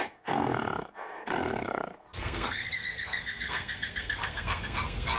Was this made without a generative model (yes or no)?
no